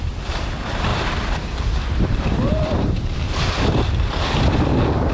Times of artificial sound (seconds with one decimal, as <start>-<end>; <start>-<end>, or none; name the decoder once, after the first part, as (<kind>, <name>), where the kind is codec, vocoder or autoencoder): 0.9-4.0 (vocoder, BigVGAN v2)